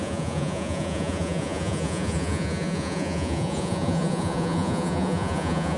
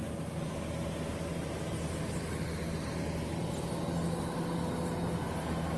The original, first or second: second